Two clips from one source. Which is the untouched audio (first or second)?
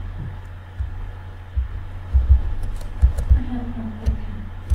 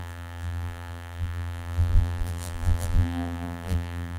first